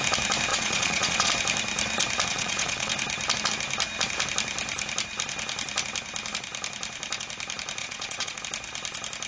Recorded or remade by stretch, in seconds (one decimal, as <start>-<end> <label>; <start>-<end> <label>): 0.0-0.5 recorded; 0.5-1.3 remade; 1.3-2.3 recorded; 2.3-2.9 remade; 2.9-7.8 recorded; 7.8-8.4 remade; 8.4-9.3 recorded